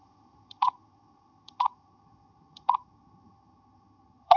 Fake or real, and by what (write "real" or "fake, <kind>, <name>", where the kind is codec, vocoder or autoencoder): fake, vocoder, HiFi-GAN